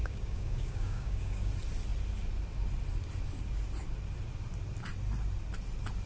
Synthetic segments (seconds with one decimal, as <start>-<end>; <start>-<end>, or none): 0.0-1.5